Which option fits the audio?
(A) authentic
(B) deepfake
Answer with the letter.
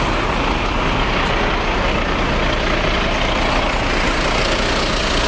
A